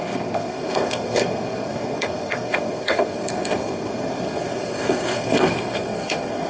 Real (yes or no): no